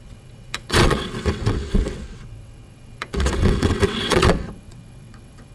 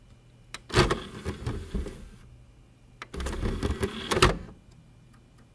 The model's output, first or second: first